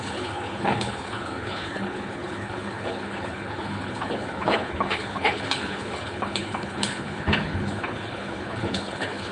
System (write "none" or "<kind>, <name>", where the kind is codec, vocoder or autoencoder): codec, HILCodec